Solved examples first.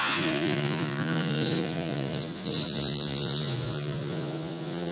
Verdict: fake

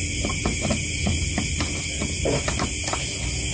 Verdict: real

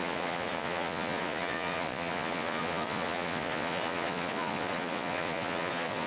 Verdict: fake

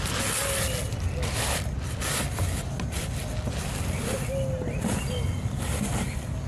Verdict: real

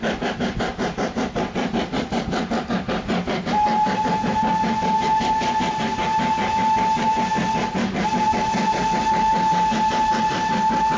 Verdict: real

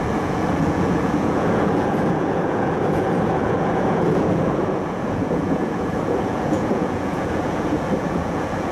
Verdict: fake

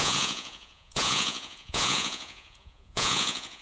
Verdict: fake